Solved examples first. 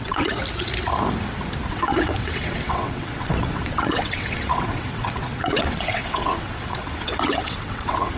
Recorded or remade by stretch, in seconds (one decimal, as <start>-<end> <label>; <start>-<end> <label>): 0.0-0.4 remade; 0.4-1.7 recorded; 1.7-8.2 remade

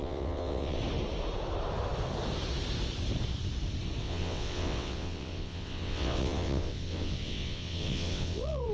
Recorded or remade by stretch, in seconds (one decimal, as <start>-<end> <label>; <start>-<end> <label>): 0.0-0.8 remade; 0.8-4.0 recorded; 4.0-8.7 remade

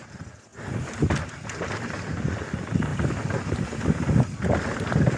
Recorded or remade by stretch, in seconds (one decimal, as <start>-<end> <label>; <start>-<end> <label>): 0.0-5.2 recorded

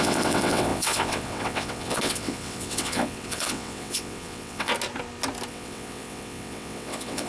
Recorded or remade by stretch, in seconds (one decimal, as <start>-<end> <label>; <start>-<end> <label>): 0.0-4.7 remade; 4.7-5.5 recorded; 5.5-7.3 remade

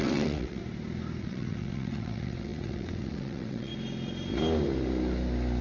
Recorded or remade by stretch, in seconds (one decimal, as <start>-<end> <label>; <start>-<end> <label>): 0.0-0.6 remade; 0.6-1.2 recorded; 1.2-3.7 remade; 3.7-5.6 recorded

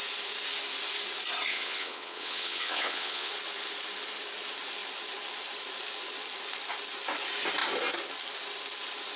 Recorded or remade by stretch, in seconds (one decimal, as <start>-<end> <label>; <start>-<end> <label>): 0.0-1.5 recorded; 1.5-3.3 remade; 3.3-9.2 recorded